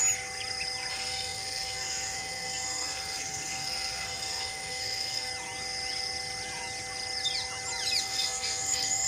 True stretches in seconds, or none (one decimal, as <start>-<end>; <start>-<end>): 0.0-0.9; 5.3-8.0